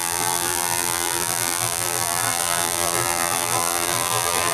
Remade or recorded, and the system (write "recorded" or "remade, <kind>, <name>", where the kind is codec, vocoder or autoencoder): remade, vocoder, BigVGAN v2